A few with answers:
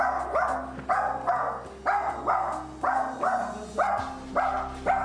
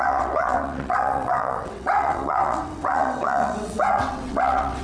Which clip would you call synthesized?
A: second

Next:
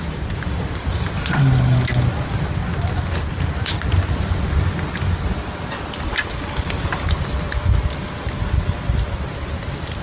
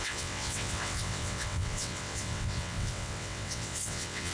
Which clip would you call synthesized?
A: second